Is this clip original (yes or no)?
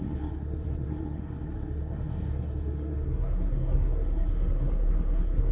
no